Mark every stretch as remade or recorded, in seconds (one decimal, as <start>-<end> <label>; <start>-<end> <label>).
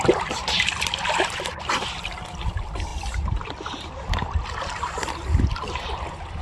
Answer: 0.0-6.4 recorded